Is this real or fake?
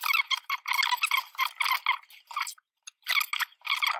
real